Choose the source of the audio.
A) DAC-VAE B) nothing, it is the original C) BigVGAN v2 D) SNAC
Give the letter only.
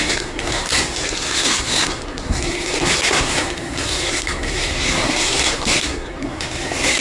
D